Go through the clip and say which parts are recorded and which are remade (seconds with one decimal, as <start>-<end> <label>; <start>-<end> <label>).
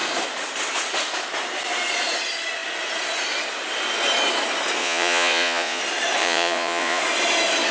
0.0-4.8 recorded; 4.8-5.8 remade; 5.8-6.2 recorded; 6.2-7.0 remade; 7.0-7.7 recorded